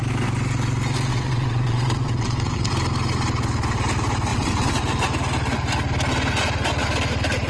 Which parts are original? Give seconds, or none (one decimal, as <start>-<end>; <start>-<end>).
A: 0.0-1.1; 2.7-4.3; 4.8-7.5